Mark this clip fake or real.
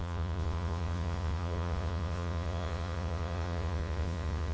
fake